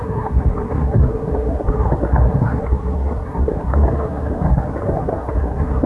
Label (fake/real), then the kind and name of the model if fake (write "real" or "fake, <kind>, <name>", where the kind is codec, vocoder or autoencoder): fake, codec, SNAC